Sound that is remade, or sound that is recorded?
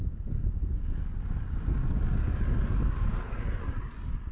recorded